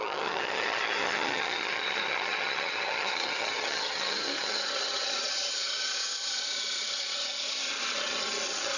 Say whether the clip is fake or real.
fake